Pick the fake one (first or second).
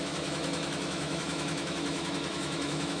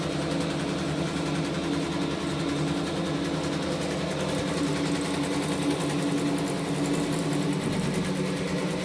first